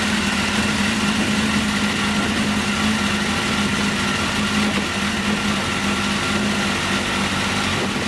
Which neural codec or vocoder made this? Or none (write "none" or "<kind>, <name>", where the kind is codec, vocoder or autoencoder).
none